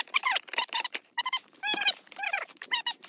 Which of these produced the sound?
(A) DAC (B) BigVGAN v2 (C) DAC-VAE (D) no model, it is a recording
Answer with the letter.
B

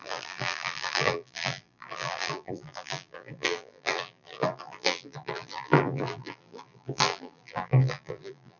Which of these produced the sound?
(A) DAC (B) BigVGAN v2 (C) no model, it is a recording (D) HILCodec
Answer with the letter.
B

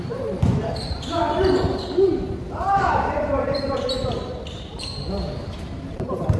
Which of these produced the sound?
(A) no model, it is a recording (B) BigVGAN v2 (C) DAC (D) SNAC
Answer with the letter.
B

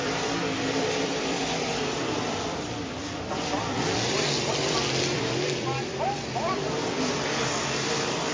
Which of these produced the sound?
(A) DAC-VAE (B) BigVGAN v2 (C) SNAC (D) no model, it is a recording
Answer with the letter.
B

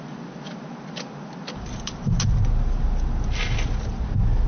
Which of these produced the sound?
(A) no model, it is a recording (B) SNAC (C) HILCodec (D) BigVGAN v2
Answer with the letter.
A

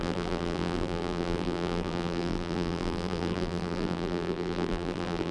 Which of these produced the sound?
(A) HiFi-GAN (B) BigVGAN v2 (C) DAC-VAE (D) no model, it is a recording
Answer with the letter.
B